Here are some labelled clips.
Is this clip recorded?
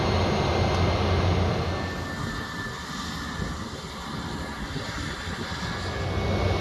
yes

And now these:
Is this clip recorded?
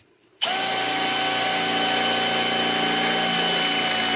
yes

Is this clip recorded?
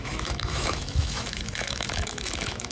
no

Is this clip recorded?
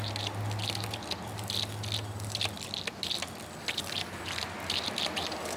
yes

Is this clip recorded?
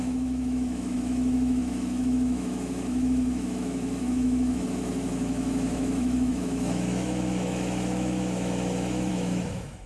no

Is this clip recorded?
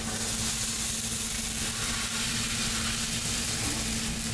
yes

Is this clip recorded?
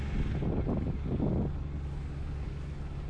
yes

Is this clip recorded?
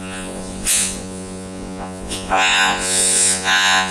no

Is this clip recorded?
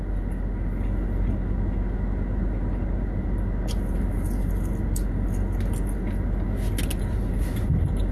yes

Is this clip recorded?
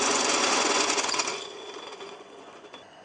no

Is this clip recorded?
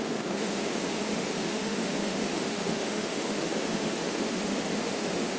no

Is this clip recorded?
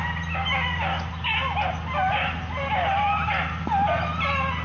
yes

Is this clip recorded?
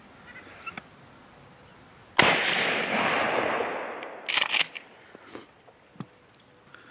yes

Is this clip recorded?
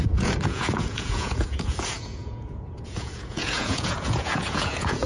no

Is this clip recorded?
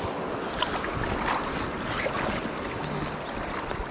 yes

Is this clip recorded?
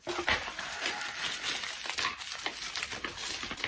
yes